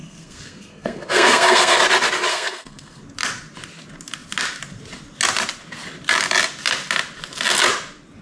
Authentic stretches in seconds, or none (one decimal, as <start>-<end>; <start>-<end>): 1.8-2.3; 3.0-8.2